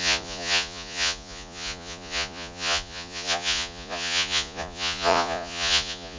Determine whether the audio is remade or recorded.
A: remade